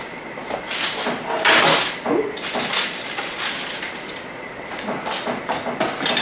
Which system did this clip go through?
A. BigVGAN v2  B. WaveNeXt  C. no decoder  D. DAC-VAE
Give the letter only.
C